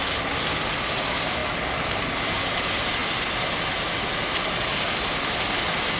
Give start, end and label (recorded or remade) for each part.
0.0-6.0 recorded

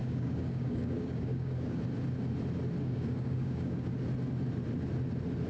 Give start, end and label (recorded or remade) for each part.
0.0-1.8 remade; 1.8-2.8 recorded; 2.8-3.9 remade; 3.9-5.5 recorded

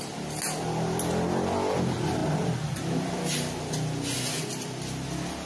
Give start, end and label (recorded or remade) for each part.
0.0-5.5 recorded

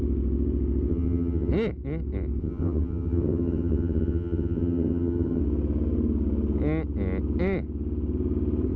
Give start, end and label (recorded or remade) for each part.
0.0-0.9 recorded; 0.9-1.5 remade; 1.5-2.4 recorded; 2.4-5.4 remade; 5.4-8.8 recorded